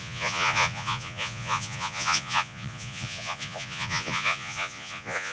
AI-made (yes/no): yes